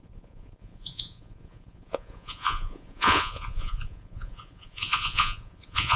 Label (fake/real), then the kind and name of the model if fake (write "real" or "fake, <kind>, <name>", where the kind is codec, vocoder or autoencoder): fake, vocoder, Vocos